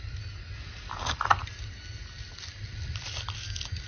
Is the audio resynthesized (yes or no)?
no